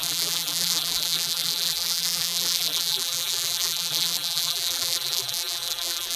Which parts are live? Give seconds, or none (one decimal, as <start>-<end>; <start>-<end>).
none